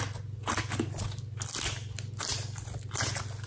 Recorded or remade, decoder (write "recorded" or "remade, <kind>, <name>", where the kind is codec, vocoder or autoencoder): recorded